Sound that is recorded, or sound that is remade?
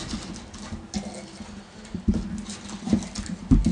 recorded